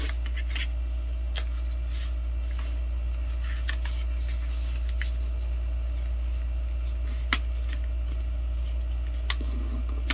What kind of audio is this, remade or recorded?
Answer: recorded